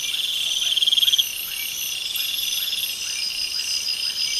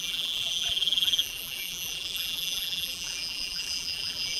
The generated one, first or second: second